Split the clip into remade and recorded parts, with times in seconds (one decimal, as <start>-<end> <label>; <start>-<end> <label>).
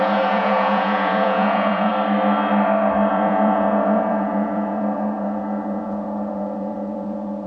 0.0-1.9 remade; 1.9-3.1 recorded; 3.1-7.5 remade